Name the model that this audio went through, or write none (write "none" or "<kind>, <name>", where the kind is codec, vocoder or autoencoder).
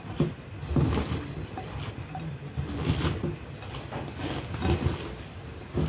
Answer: none